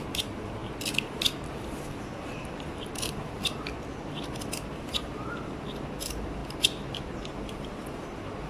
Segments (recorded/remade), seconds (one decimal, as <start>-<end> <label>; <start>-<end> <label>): 0.0-8.5 recorded